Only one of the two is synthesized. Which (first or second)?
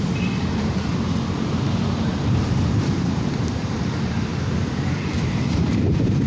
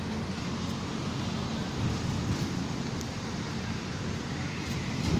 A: first